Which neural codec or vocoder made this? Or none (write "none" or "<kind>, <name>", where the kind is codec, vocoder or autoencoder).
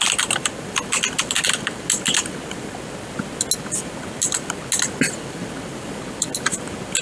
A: none